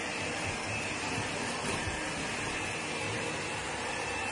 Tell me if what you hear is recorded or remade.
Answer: remade